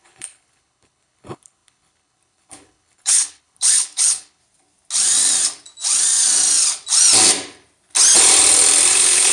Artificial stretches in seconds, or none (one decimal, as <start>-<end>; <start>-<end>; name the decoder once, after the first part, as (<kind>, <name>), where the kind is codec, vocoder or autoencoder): 0.0-4.4 (codec, HILCodec); 8.9-9.3